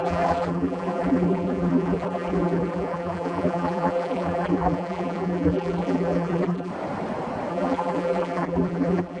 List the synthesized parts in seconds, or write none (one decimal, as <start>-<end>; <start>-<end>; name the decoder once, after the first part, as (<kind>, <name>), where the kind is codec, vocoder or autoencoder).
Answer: 0.0-6.7 (vocoder, BigVGAN v2); 7.5-9.2